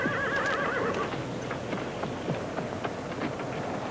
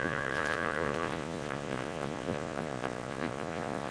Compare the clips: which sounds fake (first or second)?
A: second